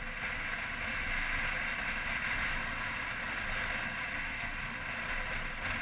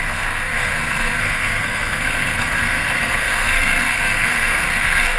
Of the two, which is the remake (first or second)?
second